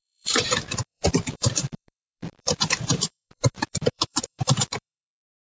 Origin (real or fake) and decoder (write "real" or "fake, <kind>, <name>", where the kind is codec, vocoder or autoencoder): fake, vocoder, BigVGAN v2